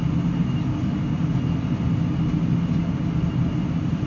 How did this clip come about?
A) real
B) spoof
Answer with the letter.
A